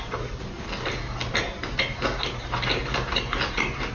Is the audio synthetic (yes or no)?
no